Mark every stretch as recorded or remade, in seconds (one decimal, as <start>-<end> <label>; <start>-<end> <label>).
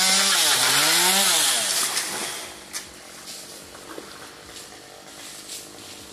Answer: 0.0-6.1 recorded